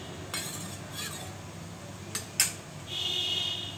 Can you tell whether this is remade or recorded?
recorded